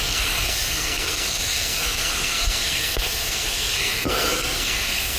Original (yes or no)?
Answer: no